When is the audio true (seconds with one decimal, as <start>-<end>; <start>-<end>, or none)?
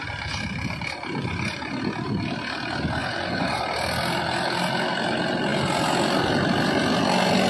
0.0-1.2; 1.8-3.0; 3.6-7.5